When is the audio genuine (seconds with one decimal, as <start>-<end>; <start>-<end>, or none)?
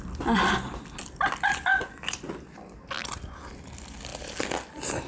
0.0-5.1